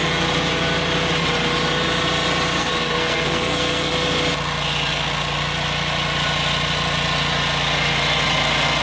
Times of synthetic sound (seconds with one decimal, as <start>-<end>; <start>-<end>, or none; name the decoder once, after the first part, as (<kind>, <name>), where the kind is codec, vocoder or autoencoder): 2.6-3.9 (codec, SNAC)